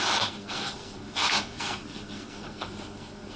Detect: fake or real fake